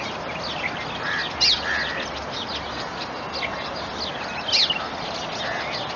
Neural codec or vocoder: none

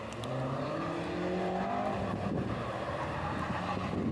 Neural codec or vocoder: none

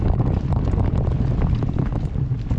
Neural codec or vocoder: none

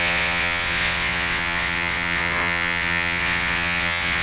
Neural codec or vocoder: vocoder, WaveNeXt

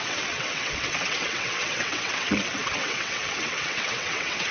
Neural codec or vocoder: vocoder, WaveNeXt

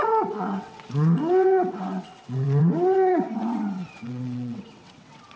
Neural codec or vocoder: vocoder, WaveNeXt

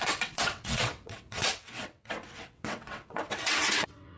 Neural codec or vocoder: vocoder, WaveNeXt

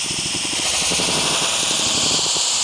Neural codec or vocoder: none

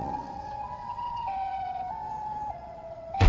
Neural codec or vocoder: vocoder, WaveNeXt